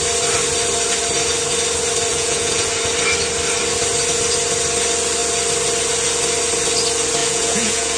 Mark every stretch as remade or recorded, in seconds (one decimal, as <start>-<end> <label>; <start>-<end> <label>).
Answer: 0.0-2.1 recorded; 2.1-2.7 remade; 2.7-7.2 recorded; 7.2-8.0 remade